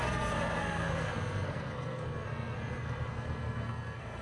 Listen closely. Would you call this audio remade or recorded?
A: remade